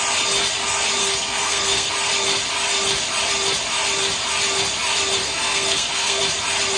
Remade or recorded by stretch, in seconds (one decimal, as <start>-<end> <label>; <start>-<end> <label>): 0.0-1.0 recorded; 1.0-1.9 remade; 1.9-5.2 recorded; 5.2-6.2 remade; 6.2-6.8 recorded